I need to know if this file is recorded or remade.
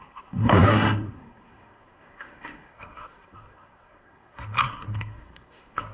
remade